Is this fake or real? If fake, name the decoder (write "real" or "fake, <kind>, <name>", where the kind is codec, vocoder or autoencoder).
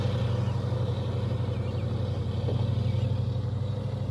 real